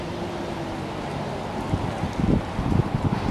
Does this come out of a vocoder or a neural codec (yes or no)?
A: no